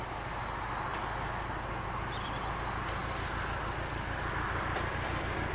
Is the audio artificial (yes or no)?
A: no